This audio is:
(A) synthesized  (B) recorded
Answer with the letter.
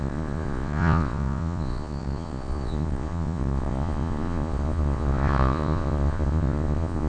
A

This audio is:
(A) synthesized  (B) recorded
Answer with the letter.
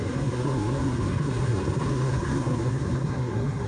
A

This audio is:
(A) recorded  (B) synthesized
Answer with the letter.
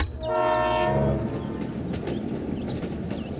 A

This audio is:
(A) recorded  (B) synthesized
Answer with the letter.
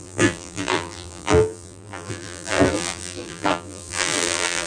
B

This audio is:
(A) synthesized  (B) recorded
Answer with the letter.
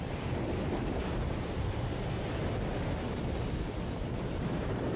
B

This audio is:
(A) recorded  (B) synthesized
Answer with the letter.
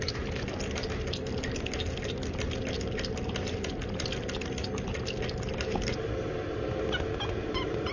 A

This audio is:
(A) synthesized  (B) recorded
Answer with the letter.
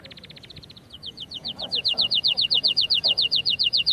A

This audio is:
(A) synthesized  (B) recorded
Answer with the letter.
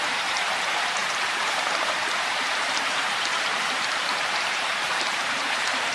A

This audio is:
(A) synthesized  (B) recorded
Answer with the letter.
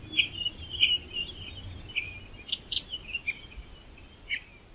B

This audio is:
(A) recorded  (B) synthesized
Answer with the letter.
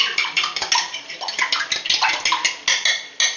A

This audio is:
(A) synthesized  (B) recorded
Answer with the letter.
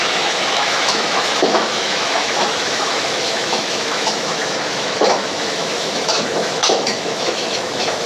A